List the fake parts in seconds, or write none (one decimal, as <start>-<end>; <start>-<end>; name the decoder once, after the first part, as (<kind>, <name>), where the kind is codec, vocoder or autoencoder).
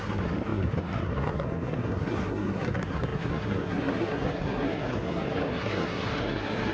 0.0-6.7 (codec, SNAC)